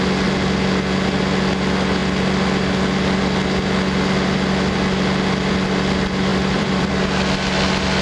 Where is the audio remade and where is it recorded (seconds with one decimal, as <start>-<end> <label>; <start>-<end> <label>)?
0.0-6.3 recorded; 6.3-6.9 remade; 6.9-8.0 recorded